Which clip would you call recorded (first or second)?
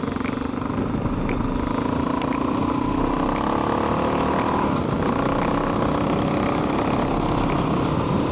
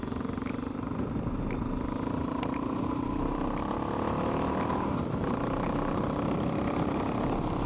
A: first